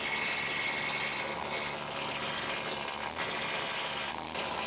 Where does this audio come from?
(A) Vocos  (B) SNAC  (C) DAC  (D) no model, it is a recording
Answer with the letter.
D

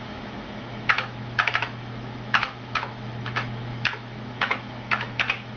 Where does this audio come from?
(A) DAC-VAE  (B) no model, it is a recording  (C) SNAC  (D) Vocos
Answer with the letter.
A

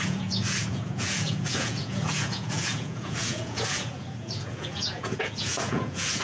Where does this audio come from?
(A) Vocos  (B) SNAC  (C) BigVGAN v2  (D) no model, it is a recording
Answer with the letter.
A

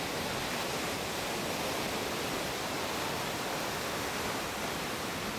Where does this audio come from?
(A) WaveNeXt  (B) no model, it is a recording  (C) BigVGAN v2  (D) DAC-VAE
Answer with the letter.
C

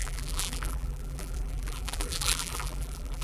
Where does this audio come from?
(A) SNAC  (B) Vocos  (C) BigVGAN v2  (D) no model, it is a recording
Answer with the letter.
C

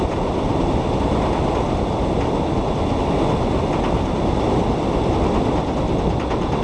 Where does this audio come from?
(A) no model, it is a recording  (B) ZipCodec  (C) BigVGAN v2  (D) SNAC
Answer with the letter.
A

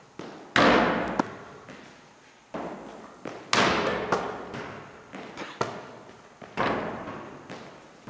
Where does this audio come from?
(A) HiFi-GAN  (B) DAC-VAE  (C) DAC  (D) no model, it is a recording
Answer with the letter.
D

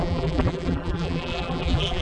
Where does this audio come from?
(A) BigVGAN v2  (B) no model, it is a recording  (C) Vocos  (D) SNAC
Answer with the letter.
A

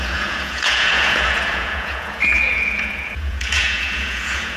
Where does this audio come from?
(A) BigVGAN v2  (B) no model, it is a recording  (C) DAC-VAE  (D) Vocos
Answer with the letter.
D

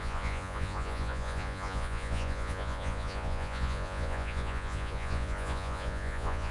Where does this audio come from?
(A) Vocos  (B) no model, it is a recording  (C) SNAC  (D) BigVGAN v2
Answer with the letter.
A